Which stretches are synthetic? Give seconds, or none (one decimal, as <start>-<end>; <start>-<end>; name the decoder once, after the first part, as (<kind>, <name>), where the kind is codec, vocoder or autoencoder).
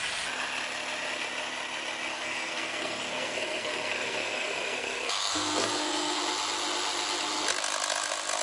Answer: 2.1-6.2 (codec, SNAC)